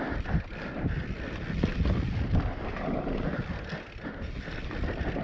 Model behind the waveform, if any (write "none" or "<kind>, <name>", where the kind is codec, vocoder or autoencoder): none